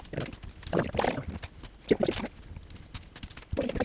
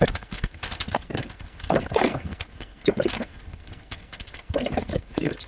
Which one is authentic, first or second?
first